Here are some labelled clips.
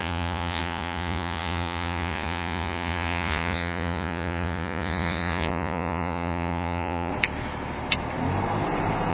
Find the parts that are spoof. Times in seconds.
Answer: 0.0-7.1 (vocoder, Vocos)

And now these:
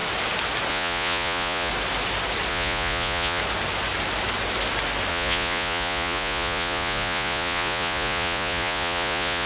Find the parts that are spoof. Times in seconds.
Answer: 0.7-1.7 (vocoder, Vocos); 2.5-3.4; 5.1-9.5

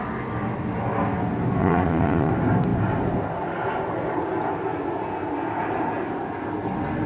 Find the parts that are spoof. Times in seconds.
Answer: 1.6-2.3 (vocoder, Vocos)

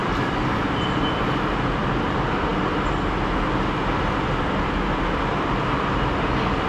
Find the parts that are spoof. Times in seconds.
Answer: none

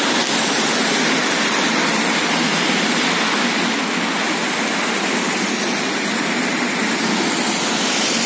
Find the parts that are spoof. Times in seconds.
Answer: none